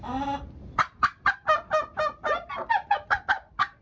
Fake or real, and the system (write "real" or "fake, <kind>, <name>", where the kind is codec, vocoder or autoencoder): real